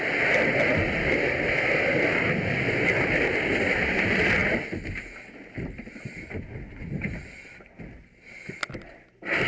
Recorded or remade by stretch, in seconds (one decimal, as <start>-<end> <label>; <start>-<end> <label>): 0.0-9.5 recorded